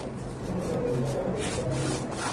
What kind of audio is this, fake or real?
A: real